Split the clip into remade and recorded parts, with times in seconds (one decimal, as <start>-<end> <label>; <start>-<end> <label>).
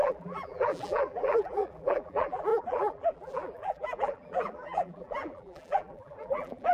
0.0-6.7 remade